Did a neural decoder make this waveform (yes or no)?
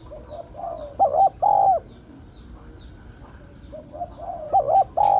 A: no